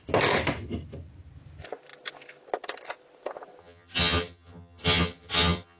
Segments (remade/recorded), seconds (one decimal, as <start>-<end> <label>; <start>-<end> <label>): 0.0-3.6 recorded; 3.6-5.8 remade